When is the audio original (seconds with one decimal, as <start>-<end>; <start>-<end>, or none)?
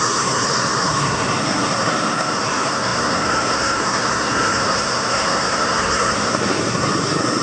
none